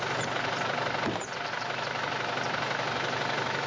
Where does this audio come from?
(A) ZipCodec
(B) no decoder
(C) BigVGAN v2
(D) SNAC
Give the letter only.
B